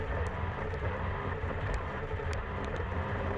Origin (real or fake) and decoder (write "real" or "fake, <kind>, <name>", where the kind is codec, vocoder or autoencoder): fake, vocoder, BigVGAN v2